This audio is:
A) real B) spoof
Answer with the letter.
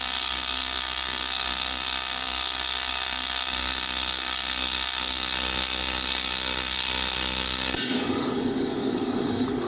B